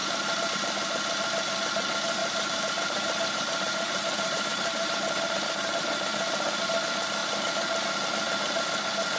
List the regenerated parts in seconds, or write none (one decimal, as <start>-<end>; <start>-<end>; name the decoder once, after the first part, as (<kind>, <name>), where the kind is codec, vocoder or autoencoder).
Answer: 0.0-0.5 (vocoder, BigVGAN v2); 2.2-6.6